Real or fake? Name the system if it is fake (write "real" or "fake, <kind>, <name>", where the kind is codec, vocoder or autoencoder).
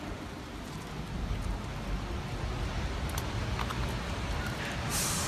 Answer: real